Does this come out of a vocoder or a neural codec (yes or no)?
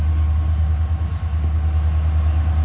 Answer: no